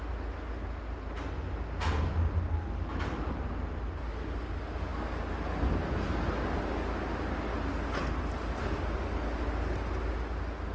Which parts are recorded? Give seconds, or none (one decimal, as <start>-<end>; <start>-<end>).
0.0-10.7